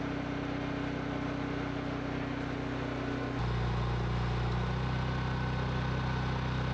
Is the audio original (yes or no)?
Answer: yes